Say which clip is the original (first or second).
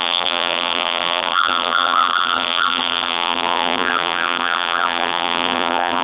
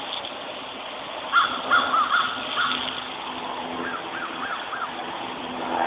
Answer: second